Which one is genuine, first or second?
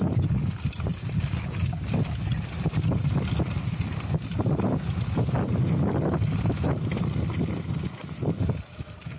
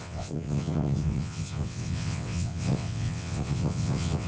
first